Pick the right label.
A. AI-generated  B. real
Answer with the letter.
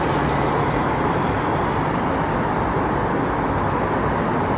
B